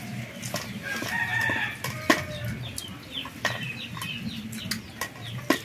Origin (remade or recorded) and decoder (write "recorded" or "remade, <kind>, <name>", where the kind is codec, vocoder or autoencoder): recorded